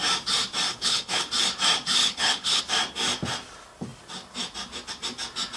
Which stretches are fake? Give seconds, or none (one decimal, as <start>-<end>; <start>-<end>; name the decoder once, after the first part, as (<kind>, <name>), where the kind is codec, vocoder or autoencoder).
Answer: 0.7-1.3 (codec, HILCodec); 2.0-2.6